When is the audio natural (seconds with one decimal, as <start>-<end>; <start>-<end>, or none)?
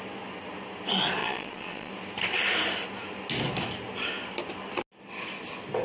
0.0-1.2; 1.9-5.8